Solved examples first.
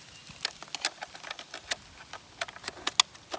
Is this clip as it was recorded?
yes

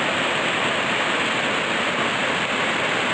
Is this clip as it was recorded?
yes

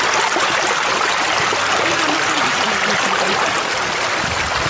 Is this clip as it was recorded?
yes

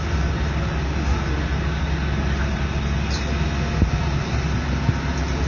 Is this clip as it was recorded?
yes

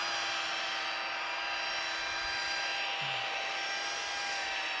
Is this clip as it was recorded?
yes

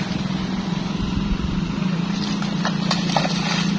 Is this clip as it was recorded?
yes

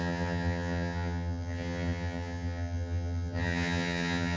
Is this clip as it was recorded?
no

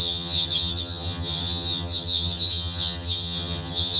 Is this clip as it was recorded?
no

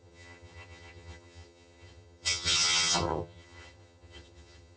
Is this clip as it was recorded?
no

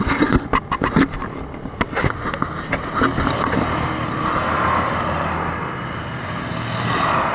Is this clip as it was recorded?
yes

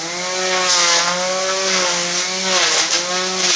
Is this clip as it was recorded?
yes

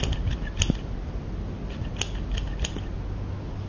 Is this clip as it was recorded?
yes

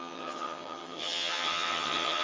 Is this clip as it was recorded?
no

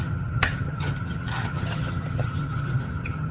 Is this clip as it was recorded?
no